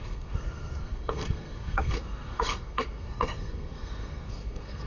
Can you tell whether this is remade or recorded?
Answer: remade